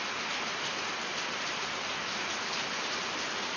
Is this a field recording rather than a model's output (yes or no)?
yes